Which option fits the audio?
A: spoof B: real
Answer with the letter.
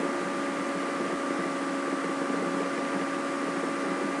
B